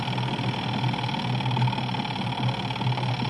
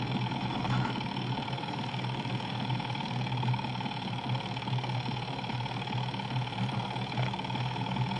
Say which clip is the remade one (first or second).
second